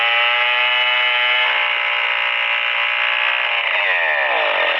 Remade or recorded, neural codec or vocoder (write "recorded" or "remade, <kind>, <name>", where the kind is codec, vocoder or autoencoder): recorded